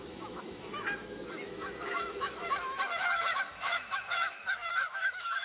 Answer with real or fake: fake